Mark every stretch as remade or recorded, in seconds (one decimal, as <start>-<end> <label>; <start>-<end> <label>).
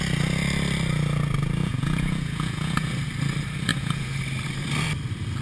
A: 0.0-1.6 recorded; 1.6-2.9 remade; 2.9-3.7 recorded; 3.7-4.2 remade; 4.2-5.4 recorded